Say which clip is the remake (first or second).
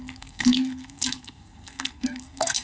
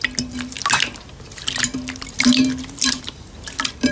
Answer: first